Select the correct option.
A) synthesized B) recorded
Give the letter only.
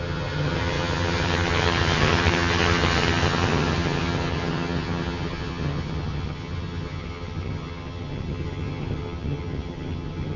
A